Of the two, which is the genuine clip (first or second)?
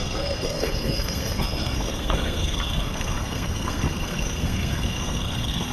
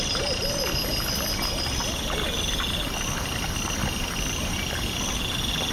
second